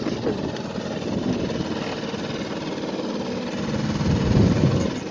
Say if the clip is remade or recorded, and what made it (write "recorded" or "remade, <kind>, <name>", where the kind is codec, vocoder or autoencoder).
recorded